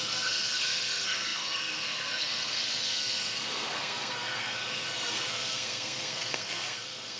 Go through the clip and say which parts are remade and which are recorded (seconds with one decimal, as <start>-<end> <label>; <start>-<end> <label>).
0.0-7.2 remade